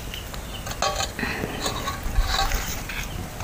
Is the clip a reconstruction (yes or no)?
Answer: no